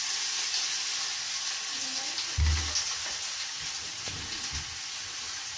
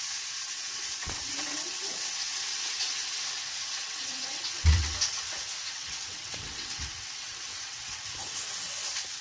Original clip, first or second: first